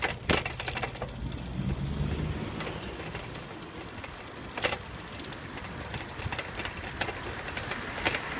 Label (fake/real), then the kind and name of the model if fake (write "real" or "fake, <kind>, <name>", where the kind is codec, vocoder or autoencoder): real